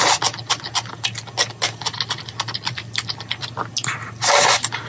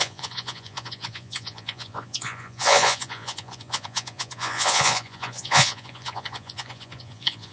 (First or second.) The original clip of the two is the first